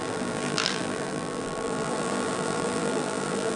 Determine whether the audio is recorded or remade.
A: remade